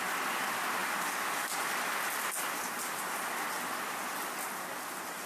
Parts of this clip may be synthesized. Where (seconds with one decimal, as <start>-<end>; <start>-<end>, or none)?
none